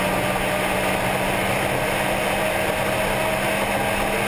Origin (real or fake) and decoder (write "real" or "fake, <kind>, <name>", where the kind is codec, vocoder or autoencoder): real